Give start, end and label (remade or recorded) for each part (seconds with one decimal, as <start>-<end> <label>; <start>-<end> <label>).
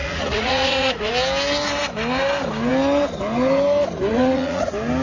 0.0-1.1 remade; 1.1-4.1 recorded; 4.1-4.6 remade; 4.6-5.0 recorded